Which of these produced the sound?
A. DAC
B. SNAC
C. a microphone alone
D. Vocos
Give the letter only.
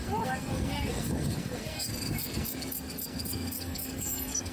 B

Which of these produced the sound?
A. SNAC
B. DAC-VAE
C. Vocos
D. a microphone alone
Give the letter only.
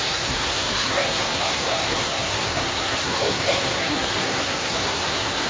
A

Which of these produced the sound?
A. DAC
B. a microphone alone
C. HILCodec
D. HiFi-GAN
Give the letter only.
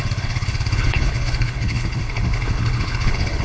C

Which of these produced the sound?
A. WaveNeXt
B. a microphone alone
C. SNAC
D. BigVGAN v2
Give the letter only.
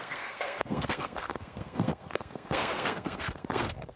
C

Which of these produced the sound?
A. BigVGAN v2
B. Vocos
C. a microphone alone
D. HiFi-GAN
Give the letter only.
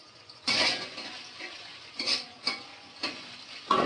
B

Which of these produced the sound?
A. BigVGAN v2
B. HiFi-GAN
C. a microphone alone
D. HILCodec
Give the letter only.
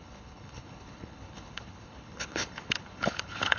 D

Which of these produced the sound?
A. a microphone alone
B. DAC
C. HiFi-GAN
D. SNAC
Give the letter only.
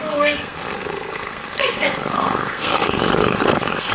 D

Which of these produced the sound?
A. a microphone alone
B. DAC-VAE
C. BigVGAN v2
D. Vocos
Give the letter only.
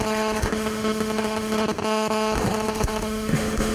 B